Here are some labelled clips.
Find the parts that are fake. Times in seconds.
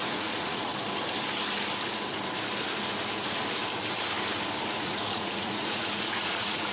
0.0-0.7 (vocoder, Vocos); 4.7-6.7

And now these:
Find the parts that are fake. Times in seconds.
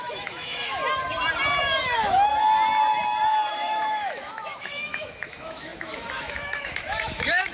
0.0-0.8 (autoencoder, DAC-VAE); 1.6-2.3; 3.5-7.5